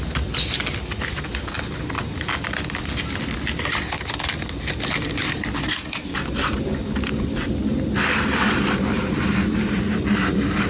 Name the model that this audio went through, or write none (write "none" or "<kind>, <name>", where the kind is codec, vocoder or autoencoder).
none